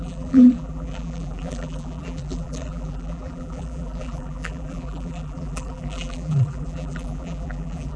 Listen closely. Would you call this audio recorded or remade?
remade